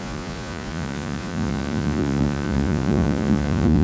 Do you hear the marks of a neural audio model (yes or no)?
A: yes